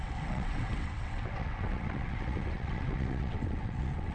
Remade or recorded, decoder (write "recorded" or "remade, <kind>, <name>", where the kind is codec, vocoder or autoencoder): remade, vocoder, WaveNeXt